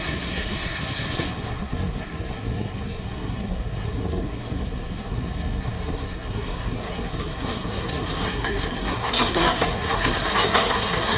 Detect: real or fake fake